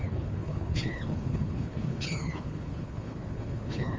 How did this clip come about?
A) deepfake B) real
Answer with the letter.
A